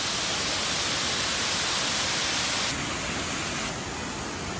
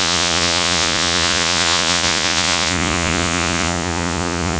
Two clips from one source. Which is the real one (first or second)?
first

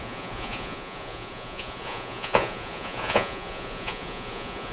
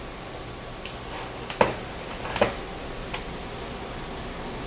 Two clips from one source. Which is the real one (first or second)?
second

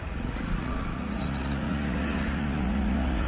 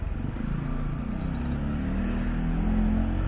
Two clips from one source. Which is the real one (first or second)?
second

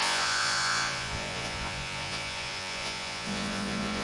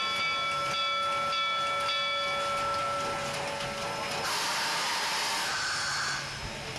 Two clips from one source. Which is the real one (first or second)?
second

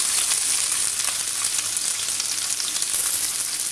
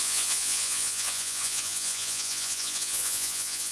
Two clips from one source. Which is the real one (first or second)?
first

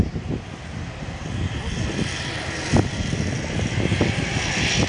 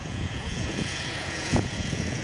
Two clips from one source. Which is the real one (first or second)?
first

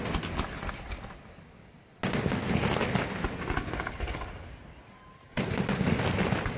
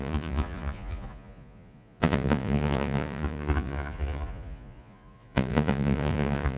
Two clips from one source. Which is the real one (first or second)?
first